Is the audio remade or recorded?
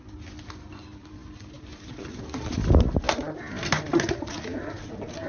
recorded